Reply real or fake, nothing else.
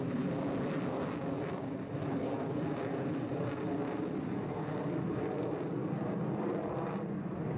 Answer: real